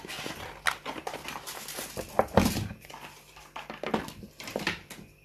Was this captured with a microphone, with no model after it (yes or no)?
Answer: yes